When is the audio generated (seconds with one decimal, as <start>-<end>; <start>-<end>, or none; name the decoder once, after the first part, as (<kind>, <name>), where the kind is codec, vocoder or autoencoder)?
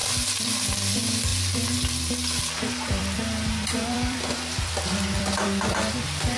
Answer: 0.6-1.3 (vocoder, BigVGAN v2); 2.4-6.4